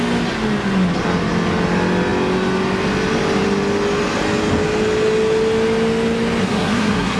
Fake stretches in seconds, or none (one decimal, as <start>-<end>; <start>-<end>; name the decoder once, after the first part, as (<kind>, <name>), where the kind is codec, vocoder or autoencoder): 6.4-7.2 (codec, SNAC)